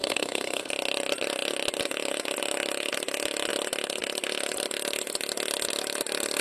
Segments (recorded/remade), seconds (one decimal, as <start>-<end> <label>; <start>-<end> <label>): 0.0-0.7 remade; 0.7-6.4 recorded

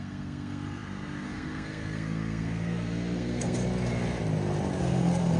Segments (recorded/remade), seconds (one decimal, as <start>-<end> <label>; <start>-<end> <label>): 0.0-3.6 remade; 3.6-4.8 recorded; 4.8-5.4 remade